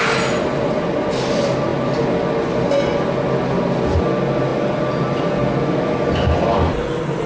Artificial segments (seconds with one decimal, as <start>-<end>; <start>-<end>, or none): none